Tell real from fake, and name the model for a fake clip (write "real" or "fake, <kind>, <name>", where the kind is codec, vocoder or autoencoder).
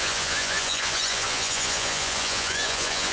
fake, vocoder, Vocos